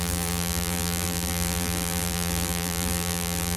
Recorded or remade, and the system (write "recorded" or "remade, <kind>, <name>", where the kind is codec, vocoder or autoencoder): remade, vocoder, BigVGAN v2